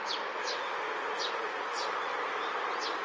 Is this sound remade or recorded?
recorded